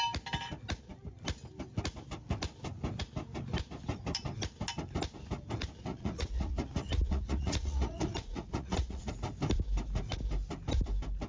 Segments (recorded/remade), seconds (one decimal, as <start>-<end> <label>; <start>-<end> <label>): 0.0-5.9 recorded; 5.9-9.1 remade; 9.1-11.3 recorded